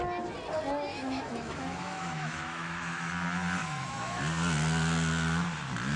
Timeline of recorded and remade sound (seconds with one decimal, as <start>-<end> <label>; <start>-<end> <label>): 0.0-0.9 recorded; 0.9-3.1 remade; 3.1-3.6 recorded; 3.6-4.2 remade; 4.2-6.0 recorded